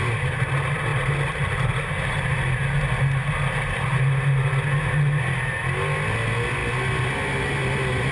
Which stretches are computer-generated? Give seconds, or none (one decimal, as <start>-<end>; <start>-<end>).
none